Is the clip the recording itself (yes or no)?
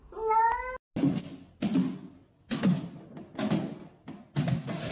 yes